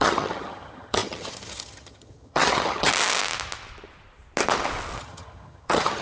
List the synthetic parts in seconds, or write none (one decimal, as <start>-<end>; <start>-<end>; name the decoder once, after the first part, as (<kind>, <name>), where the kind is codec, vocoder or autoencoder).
0.0-2.9 (vocoder, HiFi-GAN); 5.0-6.0